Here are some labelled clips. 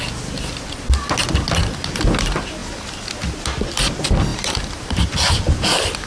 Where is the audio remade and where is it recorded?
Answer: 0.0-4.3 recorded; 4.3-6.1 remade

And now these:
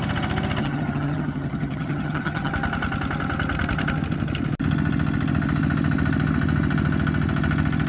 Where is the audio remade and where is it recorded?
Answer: 0.0-0.6 recorded; 0.6-2.5 remade; 2.5-7.9 recorded

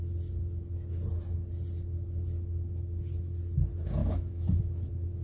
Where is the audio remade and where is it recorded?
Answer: 0.0-4.0 recorded; 4.0-4.6 remade; 4.6-5.2 recorded

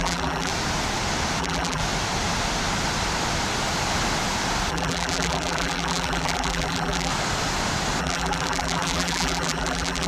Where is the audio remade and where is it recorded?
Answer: 0.0-0.5 remade; 0.5-1.4 recorded; 1.4-1.8 remade; 1.8-4.7 recorded; 4.7-7.1 remade; 7.1-8.0 recorded; 8.0-10.1 remade

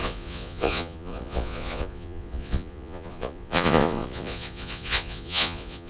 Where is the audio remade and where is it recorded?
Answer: 0.0-5.9 remade

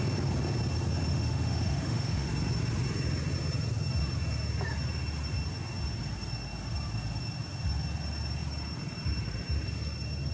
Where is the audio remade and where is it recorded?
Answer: 0.0-1.1 recorded; 1.1-2.3 remade; 2.3-10.3 recorded